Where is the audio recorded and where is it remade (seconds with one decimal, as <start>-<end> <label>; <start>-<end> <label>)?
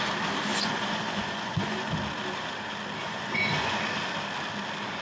0.0-0.5 recorded; 0.5-1.9 remade; 1.9-3.0 recorded; 3.0-3.8 remade; 3.8-5.0 recorded